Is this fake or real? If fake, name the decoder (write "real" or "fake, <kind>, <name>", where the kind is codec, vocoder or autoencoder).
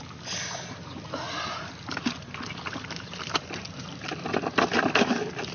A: real